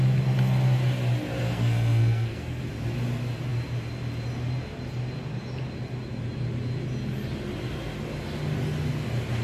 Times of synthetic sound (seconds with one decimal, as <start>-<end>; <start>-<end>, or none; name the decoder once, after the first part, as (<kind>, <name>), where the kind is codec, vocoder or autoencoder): 1.4-2.6 (codec, SNAC)